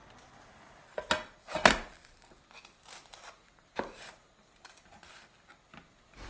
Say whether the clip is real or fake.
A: real